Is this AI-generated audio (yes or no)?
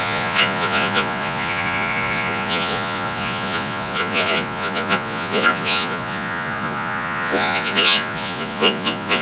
yes